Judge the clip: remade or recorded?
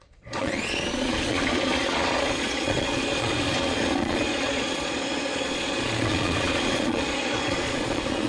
remade